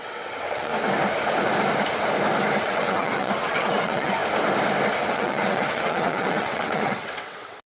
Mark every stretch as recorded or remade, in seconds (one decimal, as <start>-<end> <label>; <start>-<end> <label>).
0.0-0.7 remade; 0.7-2.6 recorded; 2.6-4.2 remade; 4.2-5.1 recorded; 5.1-7.7 remade